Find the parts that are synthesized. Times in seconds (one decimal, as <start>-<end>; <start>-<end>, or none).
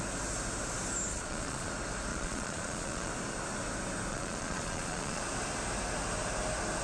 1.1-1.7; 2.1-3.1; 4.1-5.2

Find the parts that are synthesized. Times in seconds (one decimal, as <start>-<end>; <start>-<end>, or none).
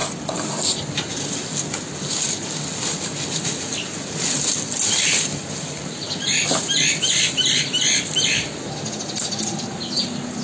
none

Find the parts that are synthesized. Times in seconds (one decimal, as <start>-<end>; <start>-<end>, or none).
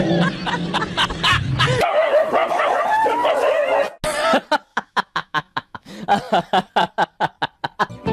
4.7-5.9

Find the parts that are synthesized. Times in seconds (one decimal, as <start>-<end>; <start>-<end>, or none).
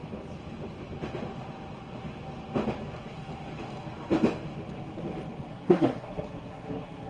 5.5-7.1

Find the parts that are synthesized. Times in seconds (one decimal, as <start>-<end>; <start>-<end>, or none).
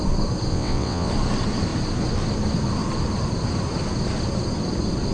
0.5-1.1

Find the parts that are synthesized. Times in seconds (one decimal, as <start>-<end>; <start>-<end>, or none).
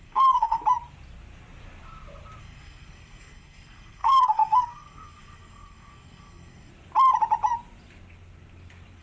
0.0-0.6; 2.4-6.7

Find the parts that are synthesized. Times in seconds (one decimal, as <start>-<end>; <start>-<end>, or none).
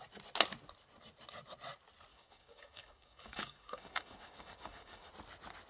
2.1-5.1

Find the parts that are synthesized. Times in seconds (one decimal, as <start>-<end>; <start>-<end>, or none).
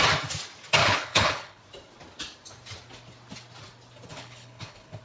0.8-1.6; 4.1-5.0